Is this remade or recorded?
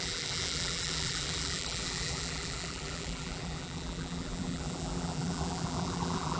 remade